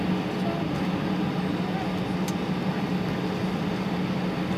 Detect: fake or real real